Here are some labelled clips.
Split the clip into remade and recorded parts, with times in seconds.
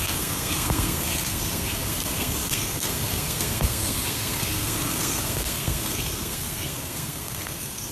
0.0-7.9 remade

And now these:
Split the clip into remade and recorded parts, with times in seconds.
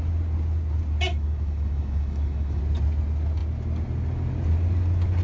0.0-1.1 recorded; 1.1-2.6 remade; 2.6-5.2 recorded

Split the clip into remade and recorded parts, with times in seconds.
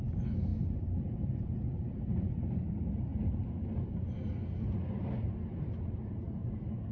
0.0-6.9 recorded